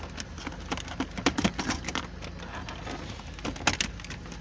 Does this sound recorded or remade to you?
recorded